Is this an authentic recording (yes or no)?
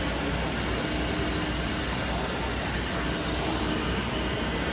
yes